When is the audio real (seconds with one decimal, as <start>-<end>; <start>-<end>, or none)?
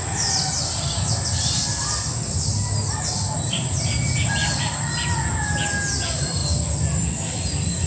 4.4-5.9; 6.4-7.4